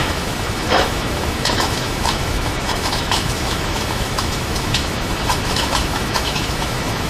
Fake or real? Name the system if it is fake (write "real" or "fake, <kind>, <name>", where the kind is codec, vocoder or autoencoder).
fake, autoencoder, DAC-VAE